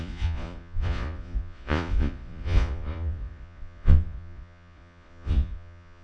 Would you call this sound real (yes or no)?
no